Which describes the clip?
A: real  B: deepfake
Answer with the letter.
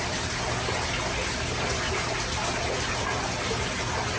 A